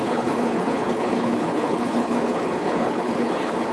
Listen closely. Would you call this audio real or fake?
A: fake